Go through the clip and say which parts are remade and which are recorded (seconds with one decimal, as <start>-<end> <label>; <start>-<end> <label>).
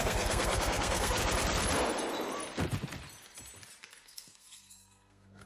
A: 0.0-1.2 remade; 1.2-3.8 recorded; 3.8-5.5 remade